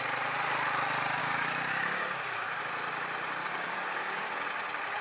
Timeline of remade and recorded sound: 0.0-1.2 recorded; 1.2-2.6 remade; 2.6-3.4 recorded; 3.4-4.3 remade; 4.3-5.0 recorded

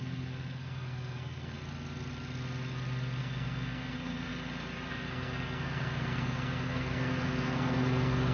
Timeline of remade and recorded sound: 0.0-1.6 remade; 1.6-3.2 recorded; 3.2-4.3 remade; 4.3-4.9 recorded; 4.9-8.3 remade

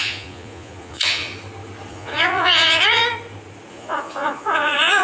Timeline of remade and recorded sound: 0.0-1.3 remade; 1.3-1.9 recorded; 1.9-3.0 remade; 3.0-3.7 recorded; 3.7-5.0 remade